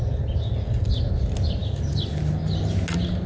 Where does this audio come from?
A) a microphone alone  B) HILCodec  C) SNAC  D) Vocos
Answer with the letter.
A